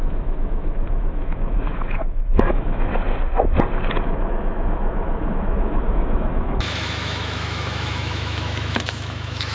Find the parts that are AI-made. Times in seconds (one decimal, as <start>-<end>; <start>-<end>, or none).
0.0-2.9; 3.9-9.5